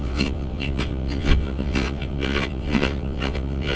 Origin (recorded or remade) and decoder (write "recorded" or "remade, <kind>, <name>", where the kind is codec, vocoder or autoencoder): remade, vocoder, WaveNeXt